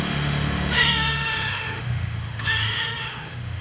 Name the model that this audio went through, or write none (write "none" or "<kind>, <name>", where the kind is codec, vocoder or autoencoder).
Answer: autoencoder, DAC-VAE